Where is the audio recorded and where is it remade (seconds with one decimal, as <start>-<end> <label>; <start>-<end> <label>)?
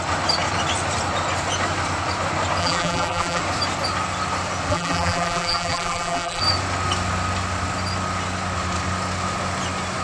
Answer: 0.0-2.6 recorded; 2.6-3.4 remade; 3.4-4.7 recorded; 4.7-6.4 remade; 6.4-10.0 recorded